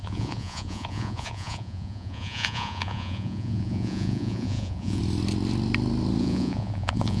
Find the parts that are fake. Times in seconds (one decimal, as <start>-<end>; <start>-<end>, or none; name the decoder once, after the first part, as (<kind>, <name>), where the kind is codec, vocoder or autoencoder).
0.0-5.0 (vocoder, Vocos); 6.2-7.2